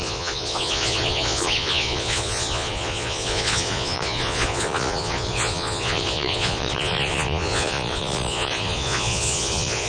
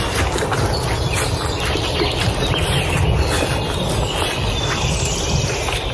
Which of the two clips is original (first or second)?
second